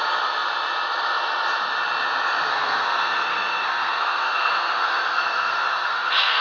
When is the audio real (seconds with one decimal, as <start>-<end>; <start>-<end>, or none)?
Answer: 0.0-2.5